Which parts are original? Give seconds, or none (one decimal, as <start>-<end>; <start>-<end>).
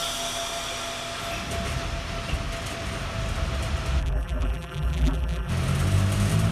0.0-4.0; 5.5-6.5